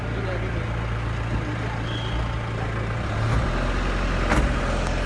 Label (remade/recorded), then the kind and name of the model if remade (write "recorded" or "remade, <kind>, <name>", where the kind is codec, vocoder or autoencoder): recorded